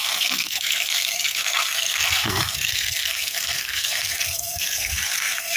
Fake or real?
fake